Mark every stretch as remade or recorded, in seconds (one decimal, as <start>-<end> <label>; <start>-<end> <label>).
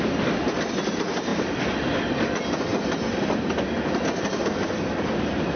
0.0-5.6 recorded